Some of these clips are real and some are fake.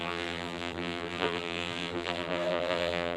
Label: fake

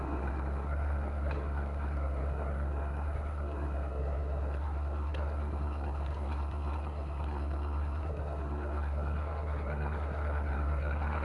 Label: fake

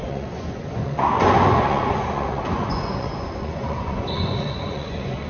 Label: fake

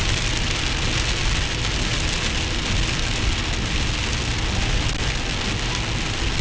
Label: real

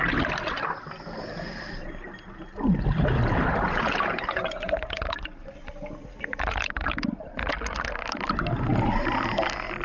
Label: real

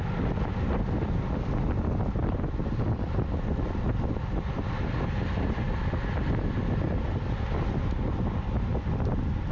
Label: real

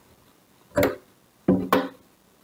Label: real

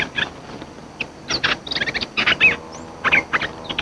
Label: real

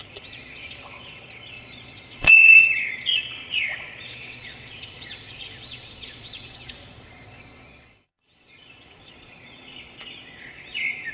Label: fake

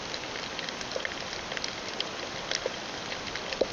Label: real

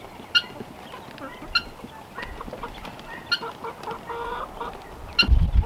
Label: real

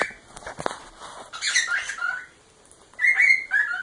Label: real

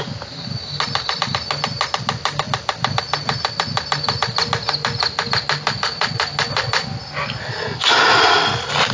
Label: real